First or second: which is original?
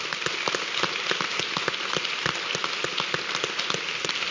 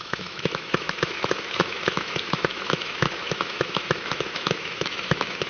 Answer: first